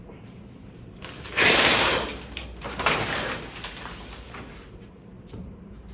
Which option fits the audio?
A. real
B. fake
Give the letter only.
B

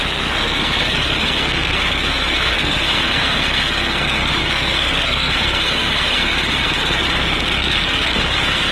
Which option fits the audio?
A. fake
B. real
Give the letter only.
A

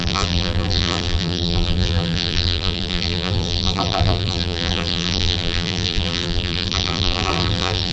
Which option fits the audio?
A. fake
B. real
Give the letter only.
A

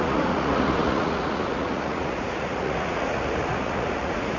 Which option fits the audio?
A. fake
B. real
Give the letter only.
A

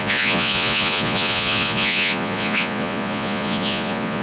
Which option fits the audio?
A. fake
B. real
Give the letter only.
A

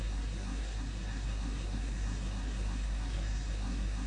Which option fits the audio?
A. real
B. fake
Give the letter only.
B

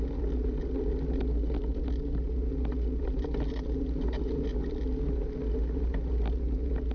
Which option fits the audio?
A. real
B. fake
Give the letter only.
A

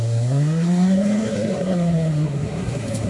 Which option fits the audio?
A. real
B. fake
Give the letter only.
B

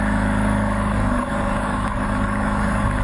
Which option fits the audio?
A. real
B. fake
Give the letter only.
B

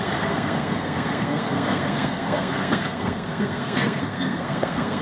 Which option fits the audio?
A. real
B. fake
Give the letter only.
B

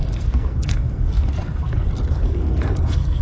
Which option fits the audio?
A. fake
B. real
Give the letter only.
A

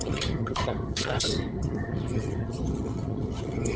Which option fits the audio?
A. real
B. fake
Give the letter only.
B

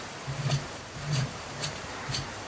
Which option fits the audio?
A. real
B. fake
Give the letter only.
A